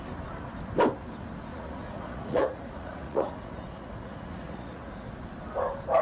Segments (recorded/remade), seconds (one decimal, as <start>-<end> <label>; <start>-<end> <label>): 0.0-1.5 recorded; 1.5-5.1 remade; 5.1-6.0 recorded